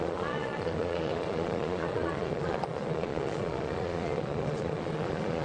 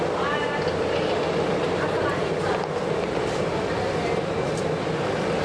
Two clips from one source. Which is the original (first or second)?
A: second